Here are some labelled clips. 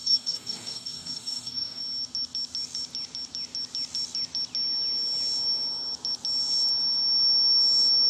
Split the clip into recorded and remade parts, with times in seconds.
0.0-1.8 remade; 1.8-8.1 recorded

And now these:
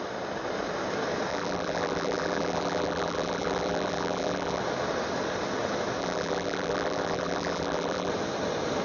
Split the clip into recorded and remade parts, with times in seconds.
0.0-1.3 recorded; 1.3-4.6 remade; 4.6-6.0 recorded; 6.0-8.1 remade; 8.1-8.8 recorded

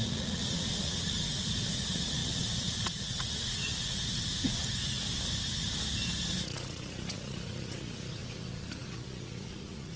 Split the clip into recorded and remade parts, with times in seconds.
0.0-4.6 remade; 4.6-6.3 recorded; 6.3-10.0 remade

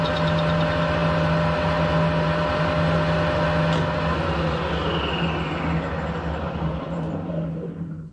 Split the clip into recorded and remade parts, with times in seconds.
0.0-8.1 recorded

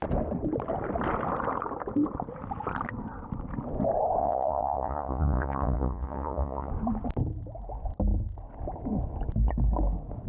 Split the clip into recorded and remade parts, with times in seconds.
0.0-4.2 recorded; 4.2-6.7 remade; 6.7-10.3 recorded

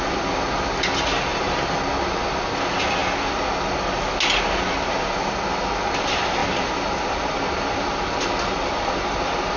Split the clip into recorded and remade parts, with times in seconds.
0.0-6.4 recorded; 6.4-9.6 remade

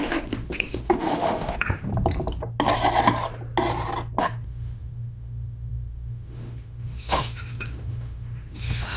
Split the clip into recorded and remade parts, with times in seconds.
0.0-1.9 remade; 1.9-4.2 recorded; 4.2-9.0 remade

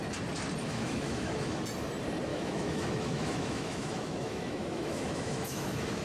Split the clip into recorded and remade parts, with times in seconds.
0.0-0.6 recorded; 0.6-1.6 remade; 1.6-2.3 recorded; 2.3-6.0 remade